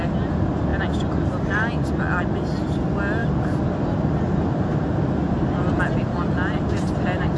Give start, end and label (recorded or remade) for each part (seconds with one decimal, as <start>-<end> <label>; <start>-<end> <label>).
0.0-7.4 recorded